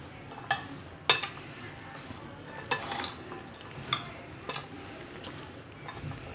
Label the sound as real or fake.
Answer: real